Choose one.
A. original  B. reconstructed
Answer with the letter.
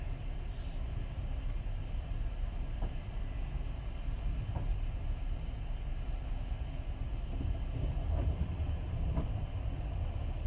A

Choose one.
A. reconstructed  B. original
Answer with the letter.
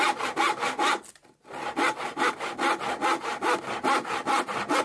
B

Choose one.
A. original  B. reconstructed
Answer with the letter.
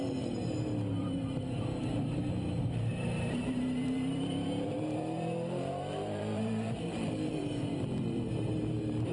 B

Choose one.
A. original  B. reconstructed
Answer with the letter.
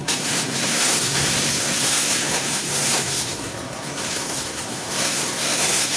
B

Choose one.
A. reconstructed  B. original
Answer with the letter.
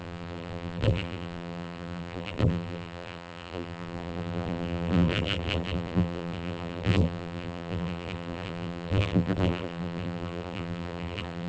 A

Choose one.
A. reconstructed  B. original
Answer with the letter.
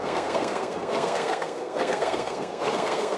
A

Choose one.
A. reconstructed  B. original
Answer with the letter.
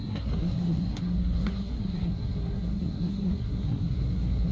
A